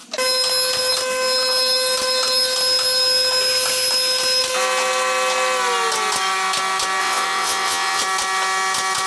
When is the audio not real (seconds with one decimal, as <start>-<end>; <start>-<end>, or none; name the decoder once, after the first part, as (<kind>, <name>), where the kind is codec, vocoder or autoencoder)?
7.0-8.0 (vocoder, WaveNeXt)